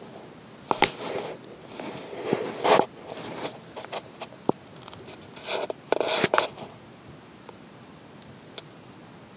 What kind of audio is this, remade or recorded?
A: recorded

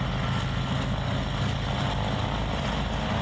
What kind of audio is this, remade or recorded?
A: recorded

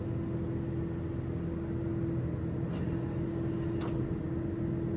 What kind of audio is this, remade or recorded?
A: recorded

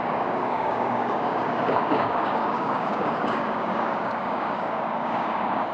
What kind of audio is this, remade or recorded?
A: remade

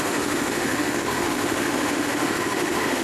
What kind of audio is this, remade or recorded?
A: remade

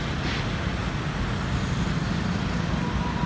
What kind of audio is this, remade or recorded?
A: recorded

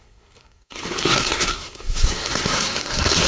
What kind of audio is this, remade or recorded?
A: remade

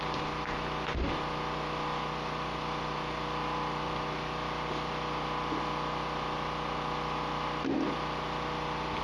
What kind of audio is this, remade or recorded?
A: recorded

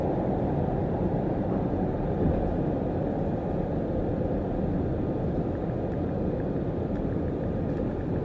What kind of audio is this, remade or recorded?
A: recorded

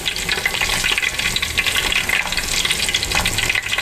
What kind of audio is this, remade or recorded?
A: recorded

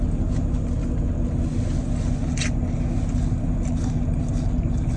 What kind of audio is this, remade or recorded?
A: recorded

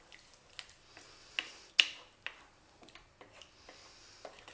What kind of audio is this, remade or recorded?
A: recorded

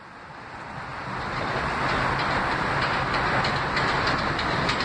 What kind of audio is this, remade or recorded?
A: recorded